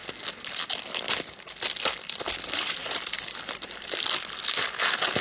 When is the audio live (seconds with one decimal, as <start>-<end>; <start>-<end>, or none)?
0.0-5.2